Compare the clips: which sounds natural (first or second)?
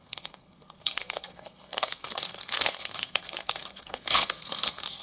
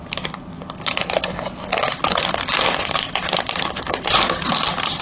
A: second